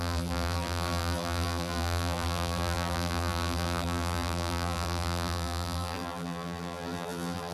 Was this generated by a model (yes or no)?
yes